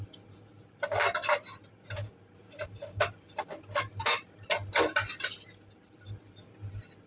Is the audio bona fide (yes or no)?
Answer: yes